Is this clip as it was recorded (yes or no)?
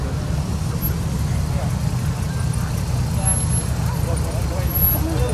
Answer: yes